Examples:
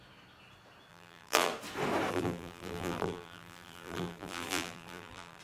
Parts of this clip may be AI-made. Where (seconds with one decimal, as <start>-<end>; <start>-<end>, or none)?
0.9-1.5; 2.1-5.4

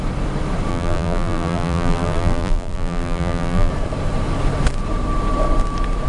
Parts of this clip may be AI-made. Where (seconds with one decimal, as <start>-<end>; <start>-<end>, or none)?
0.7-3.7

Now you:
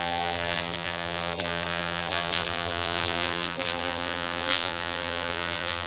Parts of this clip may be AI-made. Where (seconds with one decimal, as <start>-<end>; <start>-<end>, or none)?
0.0-5.9

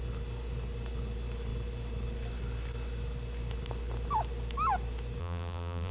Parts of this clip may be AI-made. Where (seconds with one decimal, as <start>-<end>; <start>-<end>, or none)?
5.2-5.9

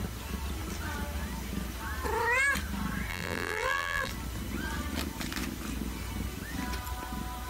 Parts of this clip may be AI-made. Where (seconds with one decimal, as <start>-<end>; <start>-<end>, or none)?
3.1-4.1

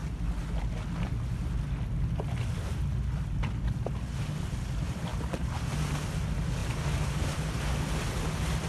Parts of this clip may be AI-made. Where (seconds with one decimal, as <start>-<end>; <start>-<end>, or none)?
6.6-7.6

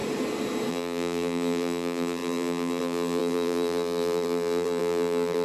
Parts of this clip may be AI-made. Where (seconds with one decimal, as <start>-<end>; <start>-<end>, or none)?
0.7-5.4

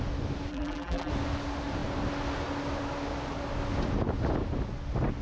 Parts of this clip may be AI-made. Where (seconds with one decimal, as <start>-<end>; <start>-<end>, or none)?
0.5-1.1